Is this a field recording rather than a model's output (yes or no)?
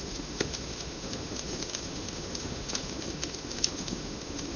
no